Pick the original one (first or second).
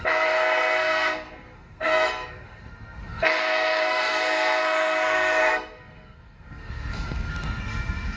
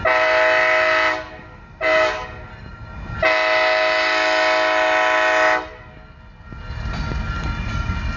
second